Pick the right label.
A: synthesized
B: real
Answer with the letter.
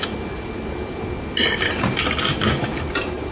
B